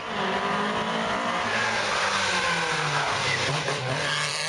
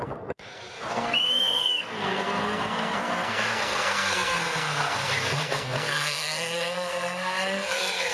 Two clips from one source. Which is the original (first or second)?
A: first